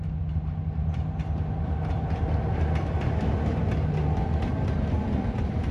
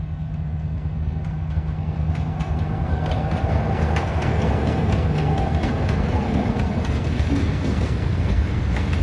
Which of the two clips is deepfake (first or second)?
second